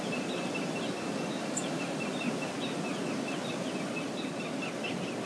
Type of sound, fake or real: real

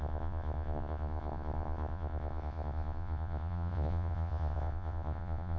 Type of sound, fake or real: fake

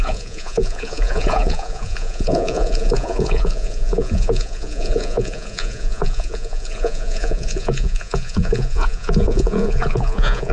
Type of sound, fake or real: fake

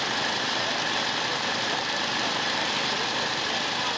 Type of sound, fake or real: real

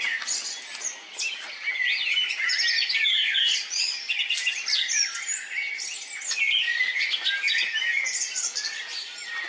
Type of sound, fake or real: real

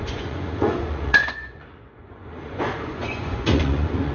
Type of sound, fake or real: fake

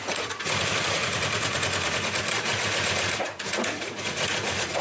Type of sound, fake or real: fake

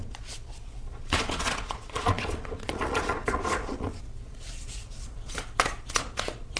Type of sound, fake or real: fake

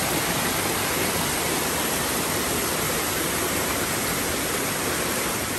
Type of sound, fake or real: real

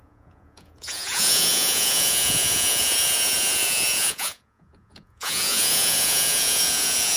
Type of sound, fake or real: fake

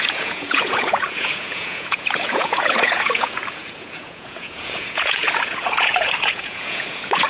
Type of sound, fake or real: fake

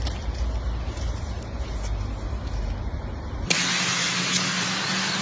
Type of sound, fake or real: real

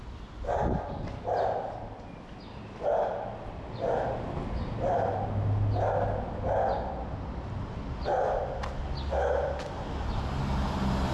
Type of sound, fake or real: real